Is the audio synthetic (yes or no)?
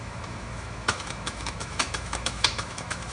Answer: yes